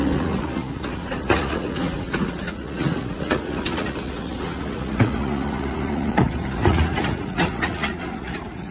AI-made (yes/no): yes